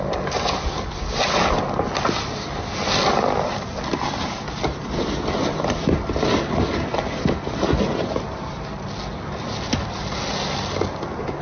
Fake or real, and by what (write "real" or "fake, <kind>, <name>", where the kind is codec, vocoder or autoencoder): real